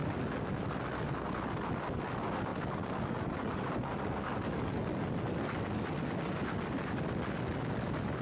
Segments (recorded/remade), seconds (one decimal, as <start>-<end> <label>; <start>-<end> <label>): 0.0-8.2 recorded